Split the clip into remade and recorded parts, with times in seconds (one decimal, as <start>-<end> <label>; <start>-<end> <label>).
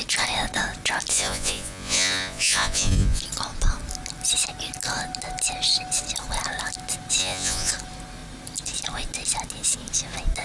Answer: 0.0-1.1 recorded; 1.1-3.2 remade; 3.2-7.2 recorded; 7.2-7.7 remade; 7.7-10.4 recorded